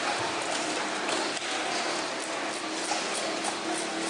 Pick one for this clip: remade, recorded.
recorded